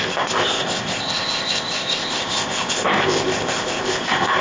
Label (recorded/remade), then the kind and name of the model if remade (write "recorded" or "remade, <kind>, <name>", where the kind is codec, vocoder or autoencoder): remade, codec, ZipCodec